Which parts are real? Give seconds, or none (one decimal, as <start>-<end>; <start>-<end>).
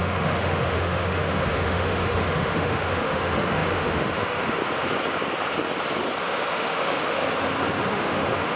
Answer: 4.6-6.2; 7.2-7.9